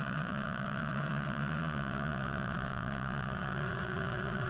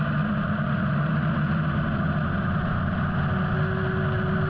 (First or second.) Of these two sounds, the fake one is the first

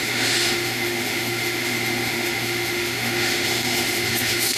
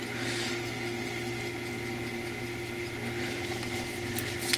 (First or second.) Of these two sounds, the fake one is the first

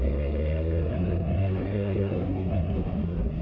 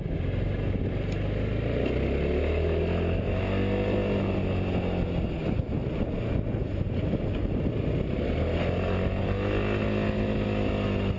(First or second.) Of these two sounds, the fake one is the first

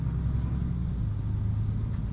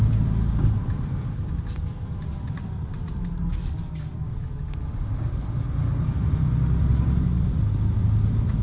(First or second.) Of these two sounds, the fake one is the second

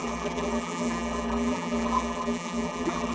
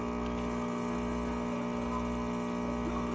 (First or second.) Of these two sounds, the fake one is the first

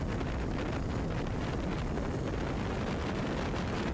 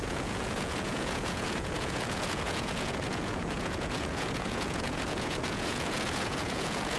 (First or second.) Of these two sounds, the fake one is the second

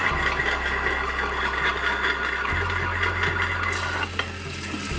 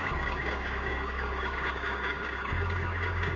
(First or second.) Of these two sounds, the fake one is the second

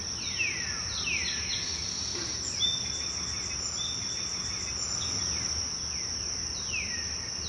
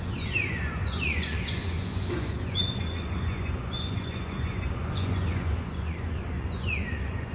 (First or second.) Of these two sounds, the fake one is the second